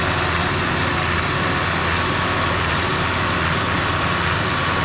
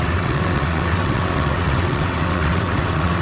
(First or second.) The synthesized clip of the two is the second